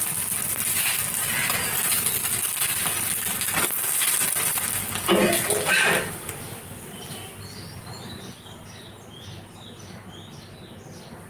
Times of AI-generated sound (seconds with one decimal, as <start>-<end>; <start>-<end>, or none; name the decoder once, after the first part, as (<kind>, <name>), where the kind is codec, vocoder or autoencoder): none